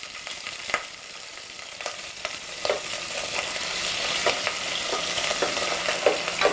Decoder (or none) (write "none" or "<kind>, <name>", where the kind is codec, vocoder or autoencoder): none